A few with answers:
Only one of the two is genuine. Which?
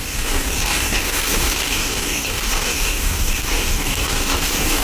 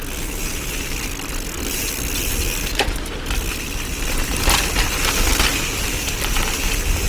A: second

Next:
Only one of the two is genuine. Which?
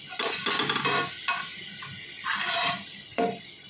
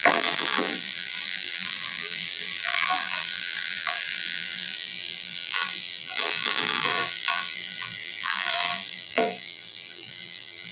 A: first